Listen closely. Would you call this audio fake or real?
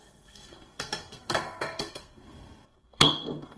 fake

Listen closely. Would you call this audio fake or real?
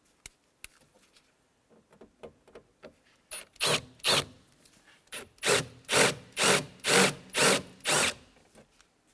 real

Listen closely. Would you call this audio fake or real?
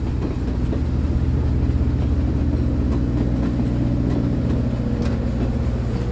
real